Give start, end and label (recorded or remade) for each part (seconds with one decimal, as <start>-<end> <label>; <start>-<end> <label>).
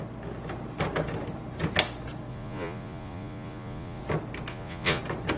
0.0-2.3 recorded; 2.3-4.0 remade; 4.0-4.5 recorded; 4.5-5.0 remade; 5.0-5.4 recorded